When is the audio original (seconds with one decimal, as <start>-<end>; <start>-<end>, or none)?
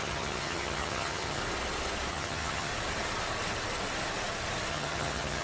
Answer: 1.4-2.1; 2.7-4.7